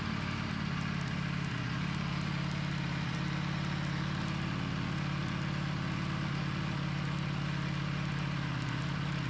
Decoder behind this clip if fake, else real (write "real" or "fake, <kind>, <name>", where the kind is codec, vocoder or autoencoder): real